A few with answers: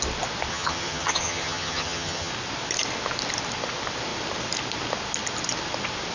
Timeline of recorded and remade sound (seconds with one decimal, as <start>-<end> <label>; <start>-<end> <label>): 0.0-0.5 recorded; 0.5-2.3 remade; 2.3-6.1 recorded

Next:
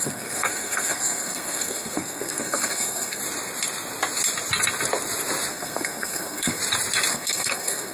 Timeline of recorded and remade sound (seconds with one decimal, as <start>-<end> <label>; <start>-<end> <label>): 0.0-3.2 remade; 3.2-5.5 recorded; 5.5-6.6 remade; 6.6-7.1 recorded; 7.1-7.9 remade

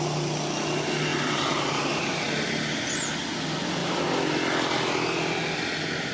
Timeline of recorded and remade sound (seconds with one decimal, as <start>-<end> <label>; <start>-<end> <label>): 0.0-6.1 recorded

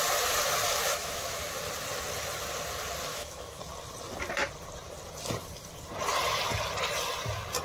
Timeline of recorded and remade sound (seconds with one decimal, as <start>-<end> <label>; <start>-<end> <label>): 0.0-0.9 recorded; 0.9-1.4 remade; 1.4-3.1 recorded; 3.1-3.6 remade; 3.6-7.6 recorded

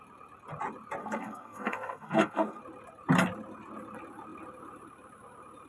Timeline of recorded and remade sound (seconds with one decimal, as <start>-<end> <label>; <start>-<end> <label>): 0.0-1.0 recorded; 1.0-2.6 remade; 2.6-5.7 recorded

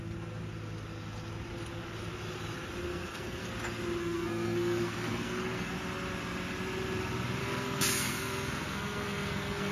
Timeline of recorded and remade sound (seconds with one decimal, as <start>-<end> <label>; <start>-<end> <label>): 0.0-2.9 recorded; 2.9-3.5 remade; 3.5-4.0 recorded; 4.0-5.7 remade; 5.7-7.4 recorded; 7.4-9.7 remade